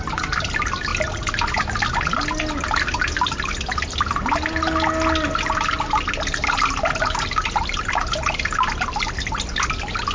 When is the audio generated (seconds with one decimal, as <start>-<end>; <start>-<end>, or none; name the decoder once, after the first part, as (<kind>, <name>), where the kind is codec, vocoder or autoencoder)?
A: none

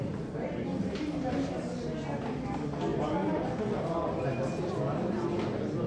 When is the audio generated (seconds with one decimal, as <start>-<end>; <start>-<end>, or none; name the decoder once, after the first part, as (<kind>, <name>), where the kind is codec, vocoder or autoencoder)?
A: none

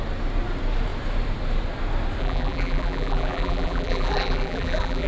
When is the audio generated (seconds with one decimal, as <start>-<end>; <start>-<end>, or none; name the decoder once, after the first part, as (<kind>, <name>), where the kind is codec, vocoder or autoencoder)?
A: 2.2-5.1 (vocoder, BigVGAN v2)

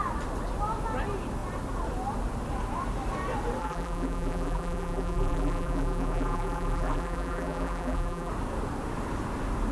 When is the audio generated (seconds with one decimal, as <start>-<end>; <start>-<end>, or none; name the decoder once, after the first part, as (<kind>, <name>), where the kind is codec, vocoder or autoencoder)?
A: 3.6-8.3 (vocoder, BigVGAN v2)